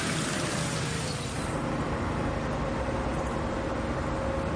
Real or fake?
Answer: real